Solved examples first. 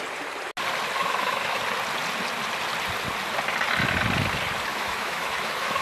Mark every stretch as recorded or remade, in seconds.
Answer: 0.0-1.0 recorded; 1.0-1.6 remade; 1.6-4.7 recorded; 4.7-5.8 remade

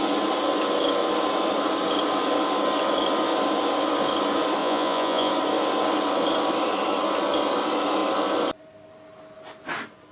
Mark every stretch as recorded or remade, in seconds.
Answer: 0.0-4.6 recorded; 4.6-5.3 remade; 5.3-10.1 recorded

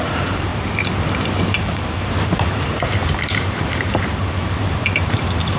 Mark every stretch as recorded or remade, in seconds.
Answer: 0.0-0.5 remade; 0.5-1.0 recorded; 1.0-5.6 remade